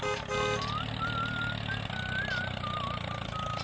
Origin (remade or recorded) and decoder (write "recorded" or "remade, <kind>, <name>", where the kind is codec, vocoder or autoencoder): recorded